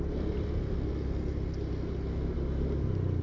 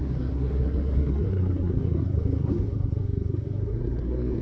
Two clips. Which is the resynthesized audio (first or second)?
second